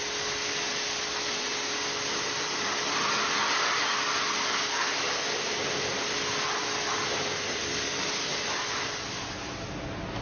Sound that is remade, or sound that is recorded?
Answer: recorded